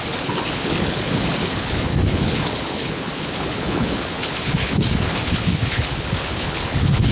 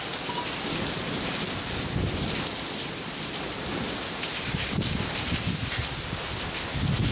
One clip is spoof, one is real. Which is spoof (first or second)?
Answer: first